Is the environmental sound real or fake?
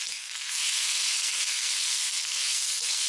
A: fake